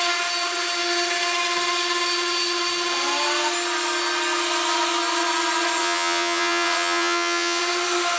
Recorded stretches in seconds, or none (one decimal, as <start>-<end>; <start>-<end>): 0.0-5.8; 7.6-8.2